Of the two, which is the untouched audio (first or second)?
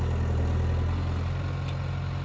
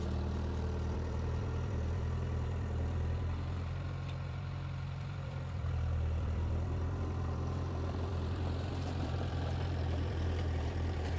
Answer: first